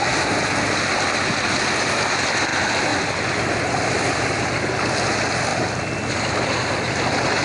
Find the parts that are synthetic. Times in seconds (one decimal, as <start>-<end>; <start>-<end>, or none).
none